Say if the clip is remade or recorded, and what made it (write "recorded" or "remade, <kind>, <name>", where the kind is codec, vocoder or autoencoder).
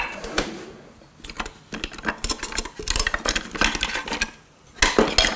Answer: recorded